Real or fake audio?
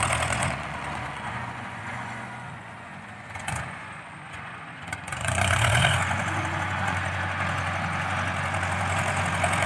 fake